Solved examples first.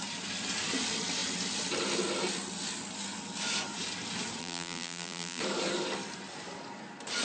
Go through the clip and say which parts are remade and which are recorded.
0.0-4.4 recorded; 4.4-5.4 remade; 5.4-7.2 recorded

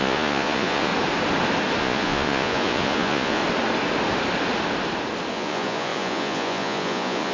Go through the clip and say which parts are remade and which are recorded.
0.0-0.9 remade; 0.9-1.8 recorded; 1.8-3.4 remade; 3.4-5.3 recorded; 5.3-7.3 remade

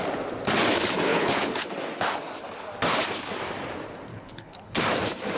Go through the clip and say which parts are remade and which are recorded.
0.0-1.1 recorded; 1.1-1.6 remade; 1.6-4.1 recorded; 4.1-4.8 remade; 4.8-5.4 recorded

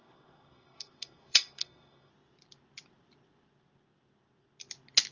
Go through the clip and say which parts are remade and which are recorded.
0.0-2.1 remade; 2.1-5.1 recorded